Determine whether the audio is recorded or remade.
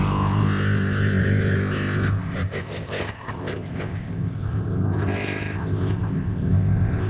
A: remade